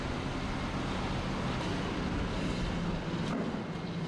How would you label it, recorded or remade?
recorded